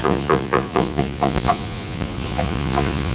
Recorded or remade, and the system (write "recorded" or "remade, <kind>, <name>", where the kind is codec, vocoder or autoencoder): remade, vocoder, Vocos